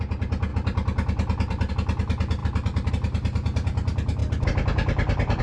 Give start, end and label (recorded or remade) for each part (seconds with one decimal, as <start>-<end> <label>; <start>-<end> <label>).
0.0-0.5 recorded; 0.5-1.7 remade; 1.7-2.4 recorded; 2.4-2.9 remade; 2.9-4.2 recorded; 4.2-5.4 remade